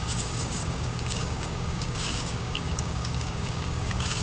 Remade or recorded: remade